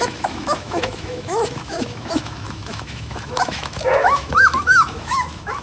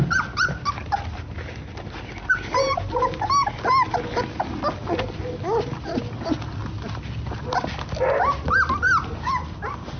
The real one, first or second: second